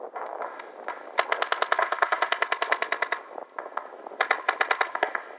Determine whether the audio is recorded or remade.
recorded